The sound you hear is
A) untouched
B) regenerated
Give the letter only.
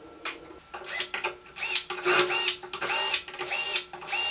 A